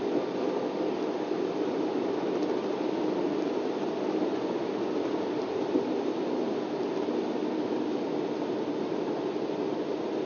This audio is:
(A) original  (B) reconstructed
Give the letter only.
A